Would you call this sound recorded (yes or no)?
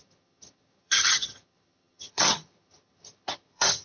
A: no